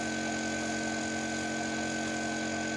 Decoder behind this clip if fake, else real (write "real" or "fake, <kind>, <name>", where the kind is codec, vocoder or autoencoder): real